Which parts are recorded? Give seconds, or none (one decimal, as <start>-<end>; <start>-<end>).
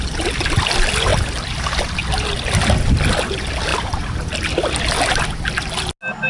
0.0-3.7; 4.2-6.3